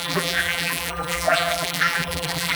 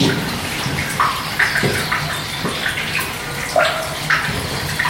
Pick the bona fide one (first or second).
second